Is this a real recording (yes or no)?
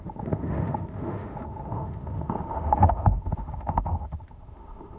no